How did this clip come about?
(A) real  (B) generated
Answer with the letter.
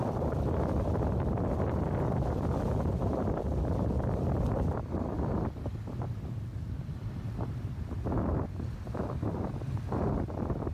A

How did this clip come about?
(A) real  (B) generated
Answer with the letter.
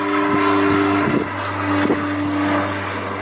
A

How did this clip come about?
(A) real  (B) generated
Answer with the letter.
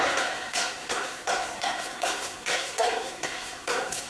B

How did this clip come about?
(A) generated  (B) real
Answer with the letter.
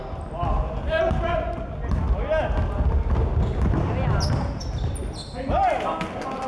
B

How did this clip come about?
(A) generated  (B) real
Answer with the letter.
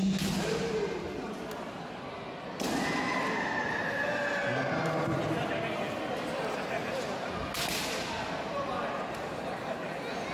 B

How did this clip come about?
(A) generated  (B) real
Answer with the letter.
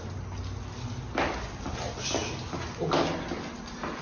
B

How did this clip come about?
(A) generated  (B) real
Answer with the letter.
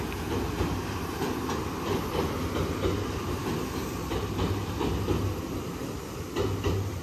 B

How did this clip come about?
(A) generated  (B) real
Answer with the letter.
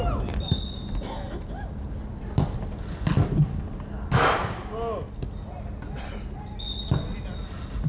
B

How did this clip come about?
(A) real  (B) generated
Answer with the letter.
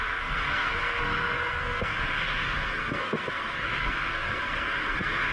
B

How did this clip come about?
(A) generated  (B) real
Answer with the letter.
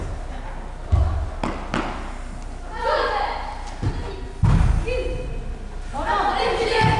B